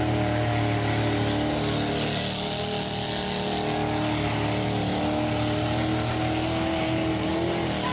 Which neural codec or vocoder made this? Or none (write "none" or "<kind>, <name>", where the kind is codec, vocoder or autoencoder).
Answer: none